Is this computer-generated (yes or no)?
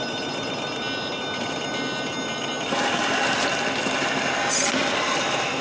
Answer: no